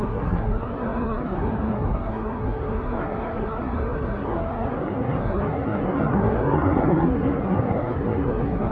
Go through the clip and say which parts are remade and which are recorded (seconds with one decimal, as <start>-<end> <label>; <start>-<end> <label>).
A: 0.0-8.7 remade